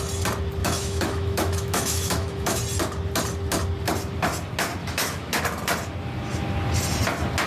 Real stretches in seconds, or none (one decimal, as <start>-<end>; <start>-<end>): 0.0-0.6; 2.6-4.8; 5.4-7.5